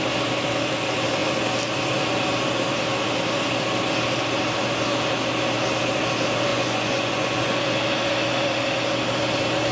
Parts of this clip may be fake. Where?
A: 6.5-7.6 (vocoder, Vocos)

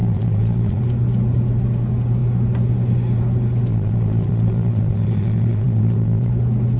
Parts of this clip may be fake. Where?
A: 0.0-0.8 (vocoder, Vocos); 3.7-6.3